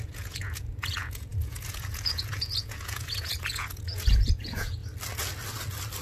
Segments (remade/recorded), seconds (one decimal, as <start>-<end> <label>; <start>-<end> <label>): 0.0-4.8 remade; 4.8-6.0 recorded